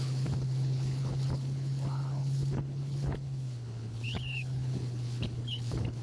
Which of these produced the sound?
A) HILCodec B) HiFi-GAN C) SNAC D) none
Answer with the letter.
A